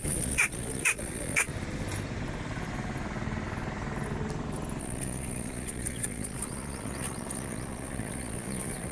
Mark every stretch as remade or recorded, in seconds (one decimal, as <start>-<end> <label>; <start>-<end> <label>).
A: 0.0-1.5 remade; 1.5-4.8 recorded; 4.8-8.9 remade